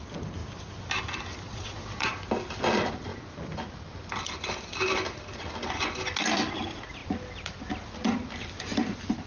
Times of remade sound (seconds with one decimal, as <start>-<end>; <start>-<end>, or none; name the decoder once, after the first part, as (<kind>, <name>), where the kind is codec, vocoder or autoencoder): 1.5-2.1 (vocoder, Vocos)